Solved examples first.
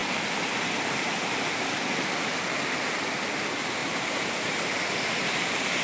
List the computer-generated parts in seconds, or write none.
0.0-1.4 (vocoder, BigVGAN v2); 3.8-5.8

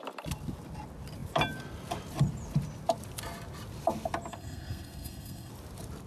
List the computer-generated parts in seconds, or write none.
4.3-5.5 (codec, SNAC)

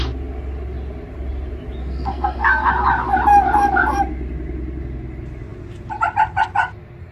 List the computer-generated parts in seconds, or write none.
1.8-2.7 (codec, SNAC)

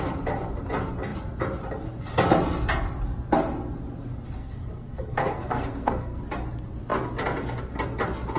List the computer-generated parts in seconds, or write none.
4.4-6.2 (codec, SNAC)

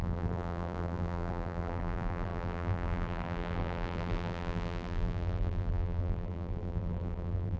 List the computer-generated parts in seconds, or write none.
0.0-7.6 (vocoder, BigVGAN v2)

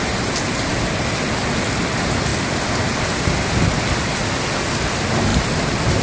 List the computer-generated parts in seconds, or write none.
0.7-1.5 (vocoder, BigVGAN v2); 2.3-3.0; 5.3-6.0